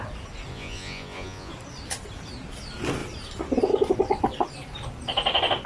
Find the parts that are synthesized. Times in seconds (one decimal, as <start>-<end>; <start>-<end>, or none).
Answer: 0.5-1.5